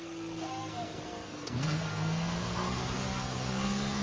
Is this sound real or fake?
fake